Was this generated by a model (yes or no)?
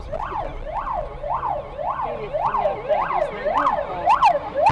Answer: no